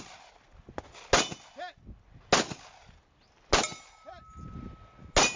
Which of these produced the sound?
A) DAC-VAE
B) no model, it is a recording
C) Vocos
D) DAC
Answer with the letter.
B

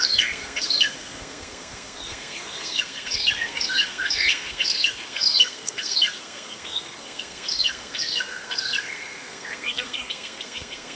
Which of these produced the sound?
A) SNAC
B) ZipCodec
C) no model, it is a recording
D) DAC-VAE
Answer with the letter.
A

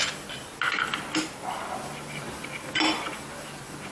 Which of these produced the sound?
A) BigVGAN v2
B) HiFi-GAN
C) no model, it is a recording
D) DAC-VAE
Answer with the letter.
C